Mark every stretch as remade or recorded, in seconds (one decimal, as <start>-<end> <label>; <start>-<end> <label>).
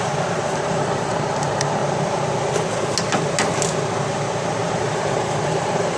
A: 0.0-1.8 remade; 1.8-4.7 recorded; 4.7-6.0 remade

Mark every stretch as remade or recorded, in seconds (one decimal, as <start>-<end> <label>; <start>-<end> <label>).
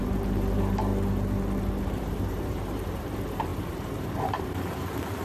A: 0.0-0.9 remade; 0.9-1.8 recorded; 1.8-5.2 remade